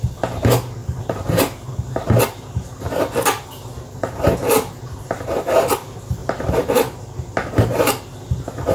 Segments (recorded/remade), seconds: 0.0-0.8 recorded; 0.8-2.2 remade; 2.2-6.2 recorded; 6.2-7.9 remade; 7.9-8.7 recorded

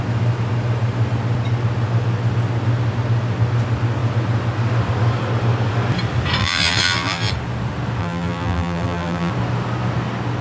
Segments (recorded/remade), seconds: 0.0-6.4 recorded; 6.4-7.3 remade; 7.3-8.0 recorded; 8.0-9.3 remade; 9.3-10.4 recorded

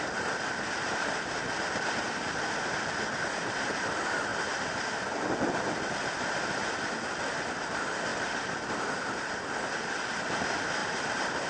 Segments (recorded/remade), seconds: 0.0-11.5 recorded

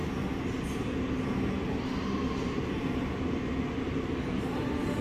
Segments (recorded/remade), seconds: 0.0-5.0 recorded

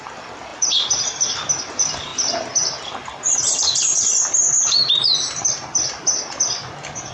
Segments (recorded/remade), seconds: 0.0-7.1 remade

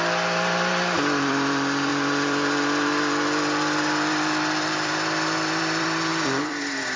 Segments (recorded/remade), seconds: 0.0-7.0 remade